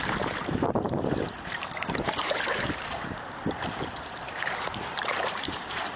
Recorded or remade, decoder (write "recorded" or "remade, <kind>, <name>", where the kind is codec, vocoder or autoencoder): remade, vocoder, BigVGAN v2